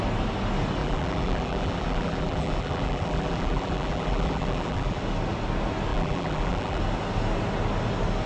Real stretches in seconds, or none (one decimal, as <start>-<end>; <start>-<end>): 0.0-0.8; 5.0-5.9; 6.8-8.3